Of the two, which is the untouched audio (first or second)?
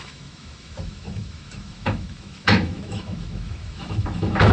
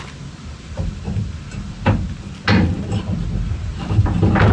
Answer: second